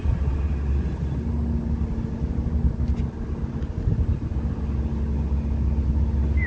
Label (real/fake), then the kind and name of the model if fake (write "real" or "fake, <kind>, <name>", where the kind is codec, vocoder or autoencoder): real